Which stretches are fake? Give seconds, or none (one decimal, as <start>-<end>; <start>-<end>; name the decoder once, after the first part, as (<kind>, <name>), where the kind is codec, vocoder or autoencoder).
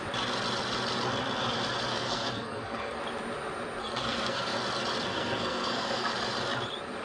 1.9-3.0 (codec, SNAC); 3.8-4.6; 5.1-6.1